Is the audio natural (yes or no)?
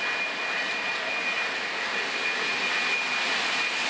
yes